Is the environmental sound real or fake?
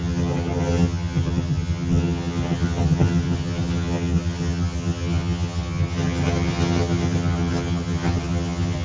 fake